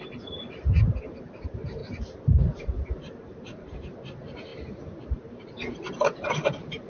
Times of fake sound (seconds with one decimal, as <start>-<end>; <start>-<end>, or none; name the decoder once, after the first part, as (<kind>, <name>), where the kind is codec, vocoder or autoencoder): 0.0-1.8 (vocoder, BigVGAN v2); 2.6-6.9